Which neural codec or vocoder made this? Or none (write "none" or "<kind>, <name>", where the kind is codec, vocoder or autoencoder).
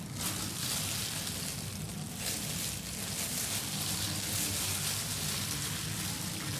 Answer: none